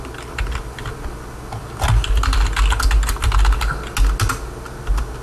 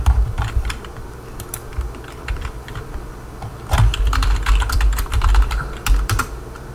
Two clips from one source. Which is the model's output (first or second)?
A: second